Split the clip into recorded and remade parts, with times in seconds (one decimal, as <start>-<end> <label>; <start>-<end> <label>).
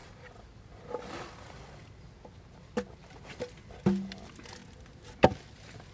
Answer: 0.0-0.8 remade; 0.8-5.9 recorded